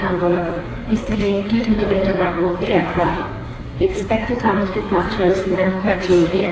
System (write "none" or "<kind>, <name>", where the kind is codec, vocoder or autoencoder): codec, SNAC